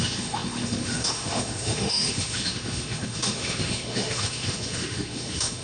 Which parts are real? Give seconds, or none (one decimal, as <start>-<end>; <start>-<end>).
none